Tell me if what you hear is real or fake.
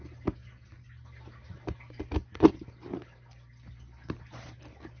real